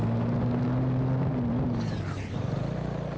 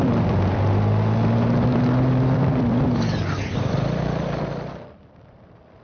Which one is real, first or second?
first